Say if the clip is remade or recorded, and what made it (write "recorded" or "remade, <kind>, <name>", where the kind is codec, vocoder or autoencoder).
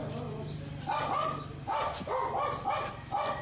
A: recorded